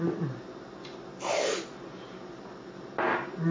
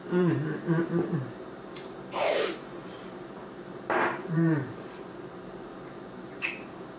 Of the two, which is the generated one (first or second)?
second